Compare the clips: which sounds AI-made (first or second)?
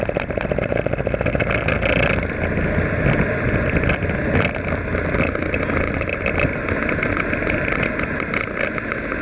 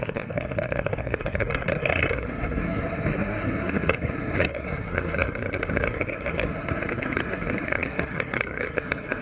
second